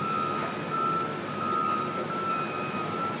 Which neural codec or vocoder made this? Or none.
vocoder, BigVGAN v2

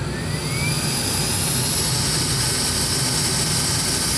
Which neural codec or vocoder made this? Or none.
none